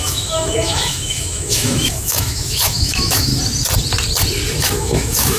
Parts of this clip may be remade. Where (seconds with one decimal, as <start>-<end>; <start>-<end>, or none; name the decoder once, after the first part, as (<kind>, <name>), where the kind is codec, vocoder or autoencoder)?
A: 0.0-3.3 (autoencoder, DAC-VAE); 4.6-5.4

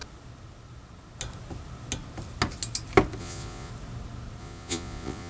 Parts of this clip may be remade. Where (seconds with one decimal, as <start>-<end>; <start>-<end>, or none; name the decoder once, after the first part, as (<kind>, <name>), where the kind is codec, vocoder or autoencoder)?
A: 3.2-3.7 (vocoder, Vocos); 4.4-5.3

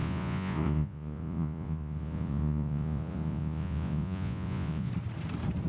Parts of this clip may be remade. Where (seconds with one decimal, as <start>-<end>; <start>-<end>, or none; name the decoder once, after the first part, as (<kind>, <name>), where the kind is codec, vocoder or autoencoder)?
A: 0.0-4.9 (vocoder, Vocos)

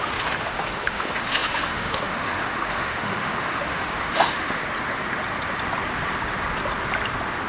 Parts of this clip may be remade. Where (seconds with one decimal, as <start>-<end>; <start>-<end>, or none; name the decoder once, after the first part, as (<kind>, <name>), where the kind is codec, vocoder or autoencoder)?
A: 0.0-4.6 (autoencoder, DAC-VAE)